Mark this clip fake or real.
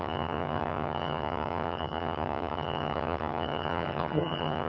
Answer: fake